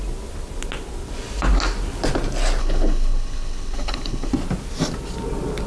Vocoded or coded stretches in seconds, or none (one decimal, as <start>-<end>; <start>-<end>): 2.6-4.3